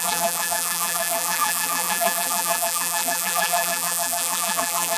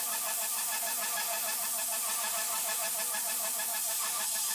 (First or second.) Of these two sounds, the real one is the second